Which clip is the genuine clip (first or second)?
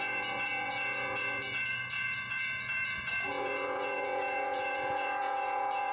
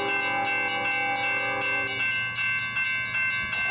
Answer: second